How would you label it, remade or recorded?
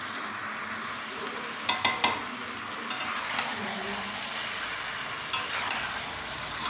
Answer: recorded